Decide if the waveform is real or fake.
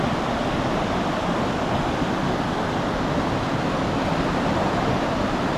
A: real